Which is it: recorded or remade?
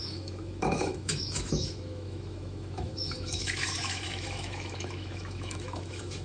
remade